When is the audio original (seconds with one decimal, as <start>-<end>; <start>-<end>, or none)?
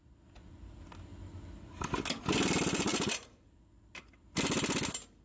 0.0-2.9; 3.6-5.2